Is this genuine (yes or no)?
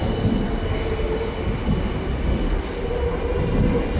yes